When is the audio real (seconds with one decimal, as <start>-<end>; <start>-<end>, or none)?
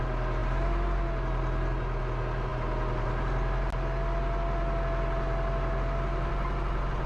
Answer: 0.0-7.1